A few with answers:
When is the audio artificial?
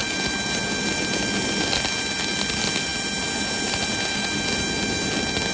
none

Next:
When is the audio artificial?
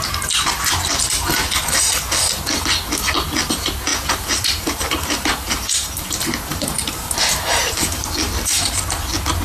3.9-6.1; 6.5-8.8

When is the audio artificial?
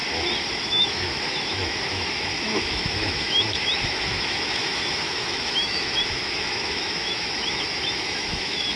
0.6-8.8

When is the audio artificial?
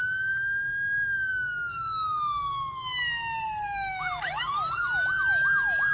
none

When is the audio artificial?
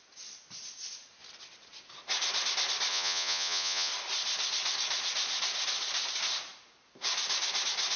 2.9-3.9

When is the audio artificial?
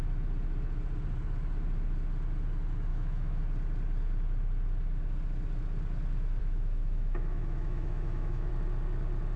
2.9-3.4; 6.4-8.5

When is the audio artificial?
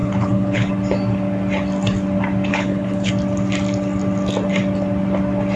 0.0-0.7; 2.5-3.1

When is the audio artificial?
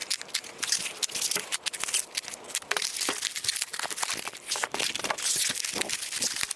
none